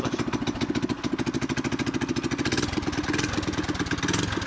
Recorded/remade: recorded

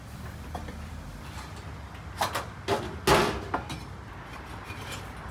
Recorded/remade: recorded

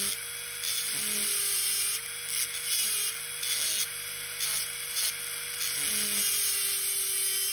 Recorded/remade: recorded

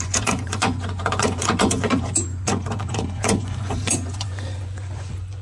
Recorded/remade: remade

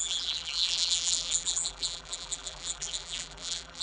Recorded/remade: remade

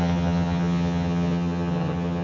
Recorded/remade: remade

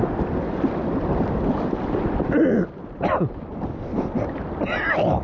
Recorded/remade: recorded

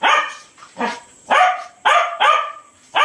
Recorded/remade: remade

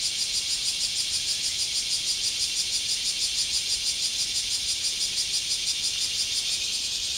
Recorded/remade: remade